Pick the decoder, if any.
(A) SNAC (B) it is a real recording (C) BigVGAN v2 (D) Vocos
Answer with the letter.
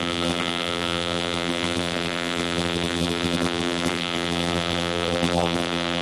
C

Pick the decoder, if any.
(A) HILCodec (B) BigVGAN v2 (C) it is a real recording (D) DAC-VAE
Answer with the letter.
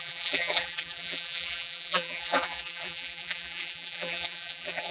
B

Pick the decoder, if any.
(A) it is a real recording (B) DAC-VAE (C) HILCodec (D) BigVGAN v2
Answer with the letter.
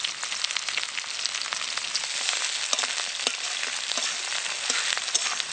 A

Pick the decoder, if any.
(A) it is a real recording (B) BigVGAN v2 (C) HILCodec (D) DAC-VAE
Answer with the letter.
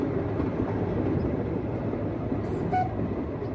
A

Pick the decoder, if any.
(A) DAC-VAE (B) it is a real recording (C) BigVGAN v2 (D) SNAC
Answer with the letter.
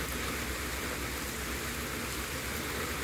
B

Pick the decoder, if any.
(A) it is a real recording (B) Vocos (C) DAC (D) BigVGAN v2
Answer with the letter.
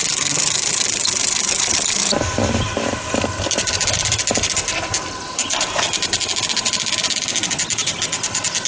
A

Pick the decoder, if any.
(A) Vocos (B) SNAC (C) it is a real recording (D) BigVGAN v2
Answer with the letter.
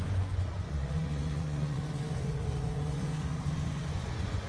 A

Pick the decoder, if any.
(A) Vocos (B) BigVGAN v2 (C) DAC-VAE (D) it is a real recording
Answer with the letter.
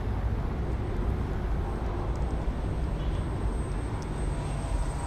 D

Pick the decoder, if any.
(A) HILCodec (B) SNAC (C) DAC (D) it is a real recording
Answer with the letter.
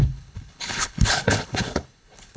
A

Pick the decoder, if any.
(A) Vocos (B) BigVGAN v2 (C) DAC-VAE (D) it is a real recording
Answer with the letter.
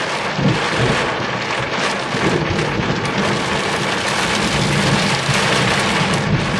D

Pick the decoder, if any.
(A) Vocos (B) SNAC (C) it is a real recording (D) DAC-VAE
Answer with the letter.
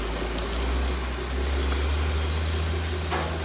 C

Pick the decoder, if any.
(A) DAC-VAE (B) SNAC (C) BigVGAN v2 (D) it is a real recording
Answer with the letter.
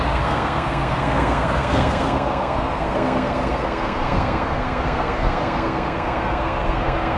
B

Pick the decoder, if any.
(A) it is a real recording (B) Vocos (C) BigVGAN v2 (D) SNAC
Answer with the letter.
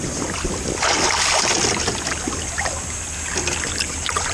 A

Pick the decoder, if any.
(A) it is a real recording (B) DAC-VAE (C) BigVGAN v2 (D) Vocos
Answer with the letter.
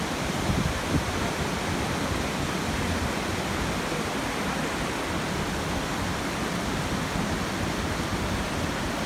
A